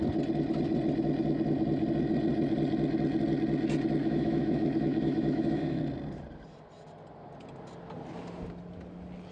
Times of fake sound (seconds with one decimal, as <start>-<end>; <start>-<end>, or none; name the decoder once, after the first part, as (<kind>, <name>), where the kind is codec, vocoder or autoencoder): 4.0-5.8 (autoencoder, DAC-VAE)